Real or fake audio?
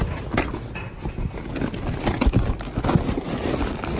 real